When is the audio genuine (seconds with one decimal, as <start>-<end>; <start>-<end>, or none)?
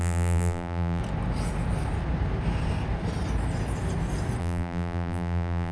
1.0-4.4